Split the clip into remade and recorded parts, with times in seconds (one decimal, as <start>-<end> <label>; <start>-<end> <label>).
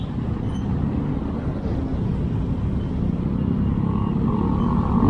0.0-5.1 recorded